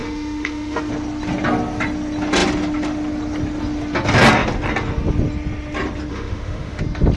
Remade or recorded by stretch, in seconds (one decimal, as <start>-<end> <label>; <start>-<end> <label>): 0.0-0.9 remade; 0.9-6.1 recorded; 6.1-6.8 remade; 6.8-7.2 recorded